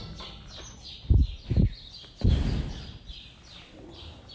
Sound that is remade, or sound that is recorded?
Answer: recorded